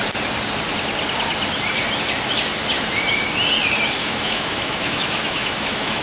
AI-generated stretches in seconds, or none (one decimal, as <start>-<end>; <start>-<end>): 4.0-6.0